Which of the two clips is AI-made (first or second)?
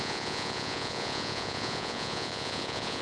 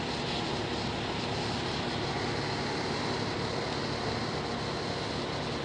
first